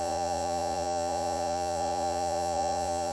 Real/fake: fake